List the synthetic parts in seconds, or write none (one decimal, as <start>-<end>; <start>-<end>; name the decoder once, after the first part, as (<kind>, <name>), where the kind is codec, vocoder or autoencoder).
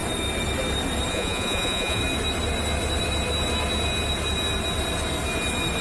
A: 1.1-2.0 (vocoder, Vocos)